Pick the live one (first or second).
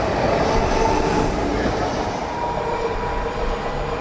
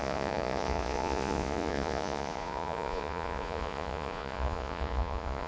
first